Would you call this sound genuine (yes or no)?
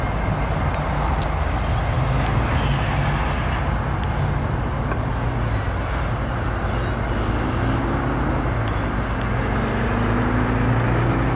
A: yes